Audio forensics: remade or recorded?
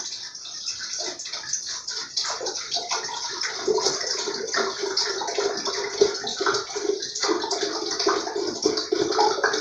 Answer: recorded